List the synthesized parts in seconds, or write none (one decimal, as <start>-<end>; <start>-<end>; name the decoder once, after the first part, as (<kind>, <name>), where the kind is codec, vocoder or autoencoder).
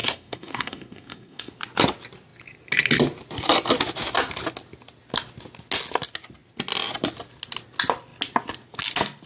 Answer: 0.0-1.5 (codec, SNAC)